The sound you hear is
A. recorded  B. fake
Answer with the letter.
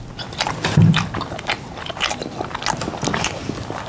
A